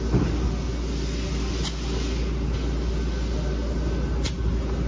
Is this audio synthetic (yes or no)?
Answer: no